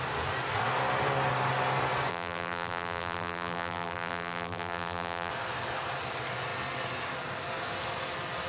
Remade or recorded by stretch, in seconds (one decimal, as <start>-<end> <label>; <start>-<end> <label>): 0.0-2.1 recorded; 2.1-5.3 remade; 5.3-8.5 recorded